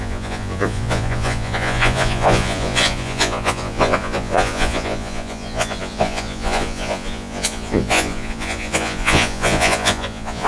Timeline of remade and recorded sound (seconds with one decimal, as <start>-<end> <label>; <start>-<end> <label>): 0.0-10.5 remade